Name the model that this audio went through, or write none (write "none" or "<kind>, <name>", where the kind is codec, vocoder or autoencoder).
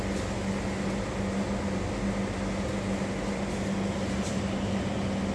none